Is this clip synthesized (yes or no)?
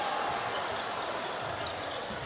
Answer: no